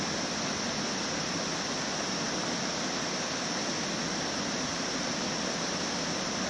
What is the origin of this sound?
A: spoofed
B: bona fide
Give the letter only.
B